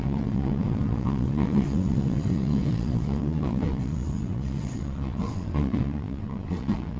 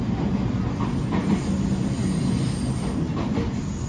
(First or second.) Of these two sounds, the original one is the second